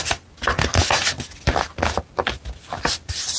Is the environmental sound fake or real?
real